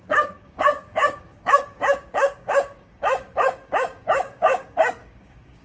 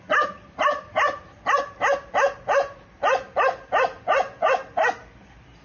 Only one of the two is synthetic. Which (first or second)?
first